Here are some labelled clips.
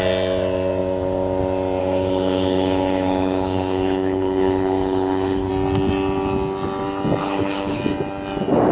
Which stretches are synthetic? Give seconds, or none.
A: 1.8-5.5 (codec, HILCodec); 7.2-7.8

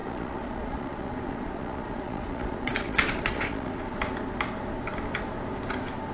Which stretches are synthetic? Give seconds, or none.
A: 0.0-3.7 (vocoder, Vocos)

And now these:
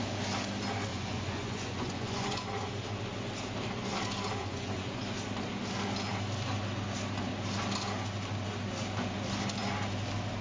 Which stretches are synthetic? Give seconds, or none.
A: 0.9-2.7 (vocoder, Vocos); 4.4-5.0

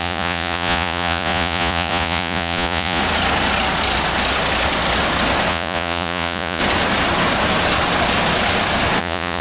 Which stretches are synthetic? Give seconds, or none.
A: 0.0-3.0 (vocoder, Vocos); 5.5-6.6; 9.0-9.4

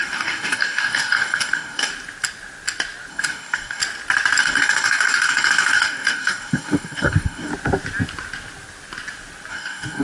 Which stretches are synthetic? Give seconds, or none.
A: 0.0-1.9 (codec, DAC); 3.1-3.8; 4.4-7.5; 9.5-10.0